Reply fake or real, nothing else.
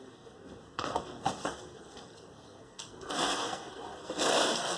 fake